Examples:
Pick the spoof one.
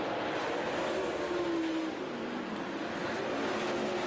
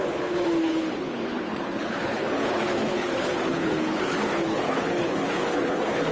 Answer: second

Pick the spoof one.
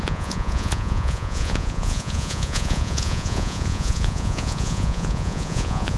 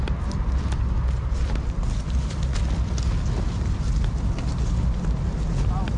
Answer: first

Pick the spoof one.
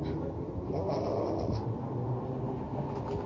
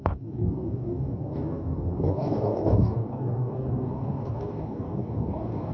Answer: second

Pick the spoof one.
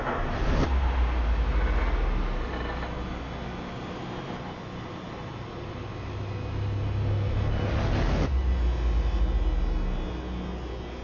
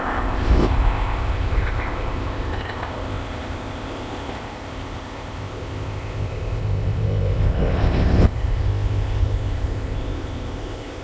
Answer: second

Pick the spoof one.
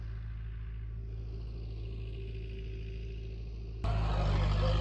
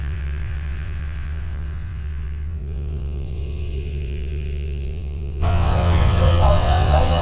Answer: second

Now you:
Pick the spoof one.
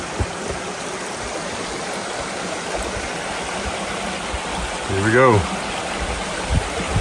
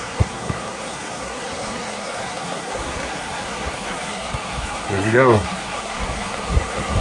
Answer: second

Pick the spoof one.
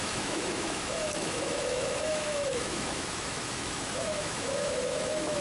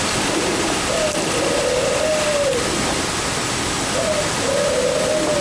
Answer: first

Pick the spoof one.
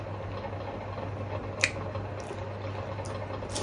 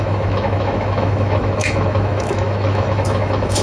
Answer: second